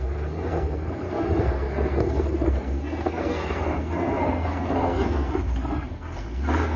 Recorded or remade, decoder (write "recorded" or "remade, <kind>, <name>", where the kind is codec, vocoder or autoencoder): remade, codec, SNAC